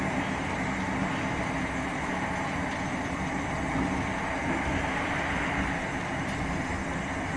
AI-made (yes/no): no